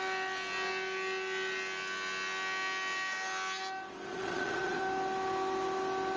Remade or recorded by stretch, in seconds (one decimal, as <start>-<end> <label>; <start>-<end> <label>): 0.0-4.1 recorded; 4.1-4.8 remade; 4.8-6.2 recorded